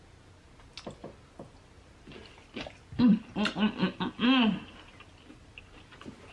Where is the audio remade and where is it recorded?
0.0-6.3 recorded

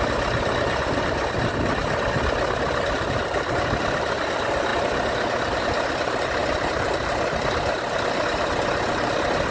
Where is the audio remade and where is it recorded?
0.0-9.5 recorded